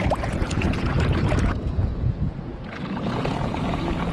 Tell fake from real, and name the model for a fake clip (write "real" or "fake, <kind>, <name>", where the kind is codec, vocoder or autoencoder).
fake, vocoder, Vocos